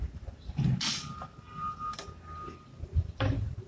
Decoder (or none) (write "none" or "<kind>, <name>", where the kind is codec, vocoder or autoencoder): none